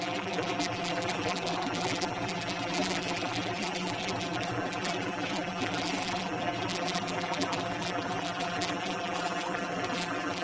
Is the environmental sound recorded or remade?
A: remade